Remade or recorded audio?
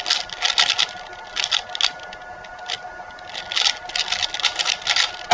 recorded